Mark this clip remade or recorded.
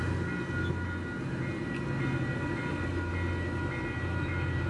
recorded